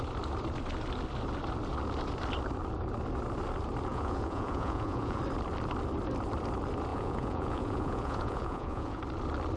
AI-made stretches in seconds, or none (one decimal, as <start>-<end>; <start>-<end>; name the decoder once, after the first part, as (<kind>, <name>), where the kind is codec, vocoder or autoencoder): 3.9-5.2 (vocoder, Vocos); 6.9-9.0